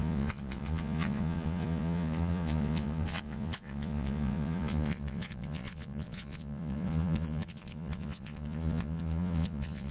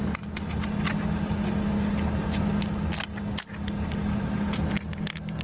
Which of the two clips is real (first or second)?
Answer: second